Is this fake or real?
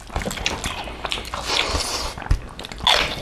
real